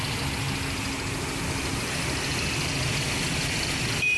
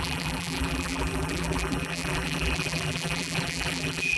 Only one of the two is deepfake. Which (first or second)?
second